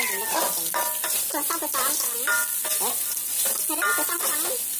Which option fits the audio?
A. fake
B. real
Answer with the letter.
B